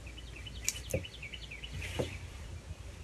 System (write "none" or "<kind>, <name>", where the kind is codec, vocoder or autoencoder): none